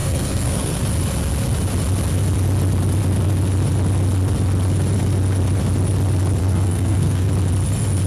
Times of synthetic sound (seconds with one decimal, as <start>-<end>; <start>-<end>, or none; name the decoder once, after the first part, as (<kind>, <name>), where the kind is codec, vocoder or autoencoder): 0.0-0.8 (codec, SNAC); 6.4-7.3